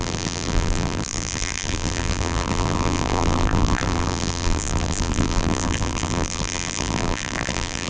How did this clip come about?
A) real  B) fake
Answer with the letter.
B